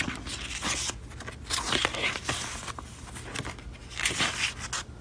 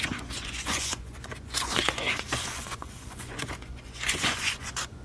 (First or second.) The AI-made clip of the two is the second